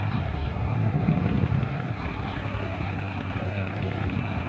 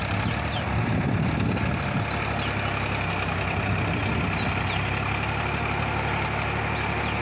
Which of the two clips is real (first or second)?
second